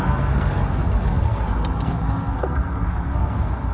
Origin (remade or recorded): remade